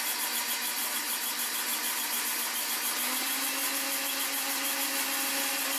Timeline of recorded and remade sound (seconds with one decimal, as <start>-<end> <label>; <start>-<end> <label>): 0.0-5.8 recorded